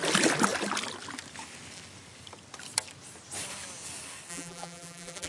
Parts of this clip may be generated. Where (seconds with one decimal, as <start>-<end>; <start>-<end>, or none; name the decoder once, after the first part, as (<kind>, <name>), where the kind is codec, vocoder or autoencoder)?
4.3-5.3 (vocoder, BigVGAN v2)